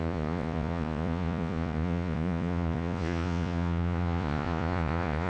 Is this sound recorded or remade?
remade